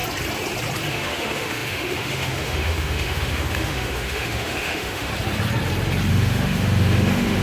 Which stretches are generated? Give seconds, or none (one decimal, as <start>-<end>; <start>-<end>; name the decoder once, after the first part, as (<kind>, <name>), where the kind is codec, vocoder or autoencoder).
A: 0.9-5.1 (autoencoder, DAC-VAE); 6.1-7.4